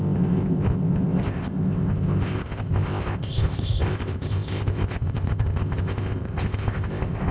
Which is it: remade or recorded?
remade